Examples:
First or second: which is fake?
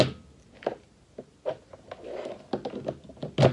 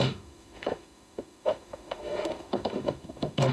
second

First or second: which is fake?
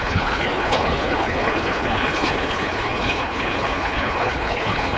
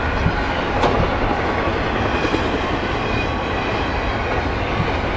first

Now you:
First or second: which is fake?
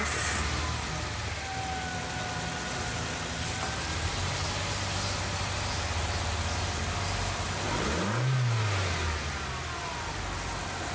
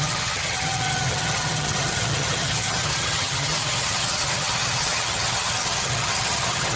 second